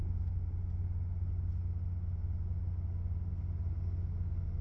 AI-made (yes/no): no